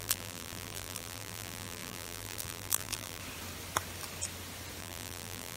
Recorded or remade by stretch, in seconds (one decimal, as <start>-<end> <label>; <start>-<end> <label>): 0.0-3.2 remade; 3.2-4.8 recorded; 4.8-5.6 remade